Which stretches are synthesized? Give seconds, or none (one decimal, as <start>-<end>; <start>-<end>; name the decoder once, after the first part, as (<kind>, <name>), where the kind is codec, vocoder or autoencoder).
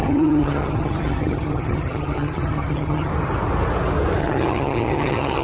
0.0-3.1 (vocoder, HiFi-GAN); 4.2-5.4